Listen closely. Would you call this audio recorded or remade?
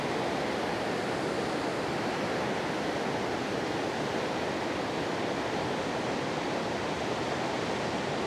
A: recorded